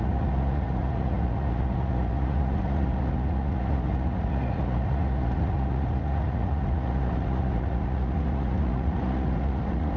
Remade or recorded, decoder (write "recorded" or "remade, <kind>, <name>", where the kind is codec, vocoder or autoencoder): remade, vocoder, Vocos